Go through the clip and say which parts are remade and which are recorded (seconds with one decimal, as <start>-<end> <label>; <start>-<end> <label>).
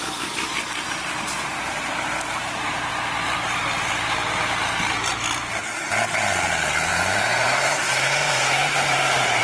0.0-1.5 recorded; 1.5-5.1 remade; 5.1-6.9 recorded; 6.9-9.4 remade